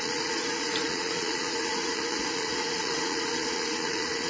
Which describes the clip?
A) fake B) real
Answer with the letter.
A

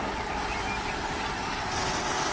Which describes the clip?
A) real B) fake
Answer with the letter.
A